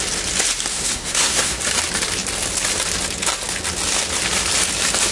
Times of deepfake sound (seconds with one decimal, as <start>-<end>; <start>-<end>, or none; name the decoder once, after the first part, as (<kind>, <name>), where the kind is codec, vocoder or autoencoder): 0.7-1.6 (codec, SNAC)